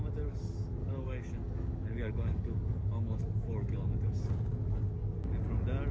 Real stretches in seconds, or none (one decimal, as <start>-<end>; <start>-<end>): 0.0-0.8; 4.3-5.9